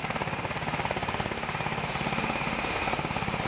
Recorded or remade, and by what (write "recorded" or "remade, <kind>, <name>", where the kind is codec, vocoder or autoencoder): remade, vocoder, BigVGAN v2